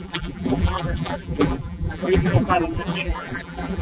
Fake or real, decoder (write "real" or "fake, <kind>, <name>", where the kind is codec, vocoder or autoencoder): fake, vocoder, BigVGAN v2